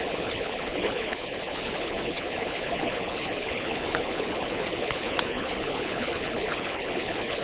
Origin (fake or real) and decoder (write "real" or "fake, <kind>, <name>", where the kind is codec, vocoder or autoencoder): fake, codec, HILCodec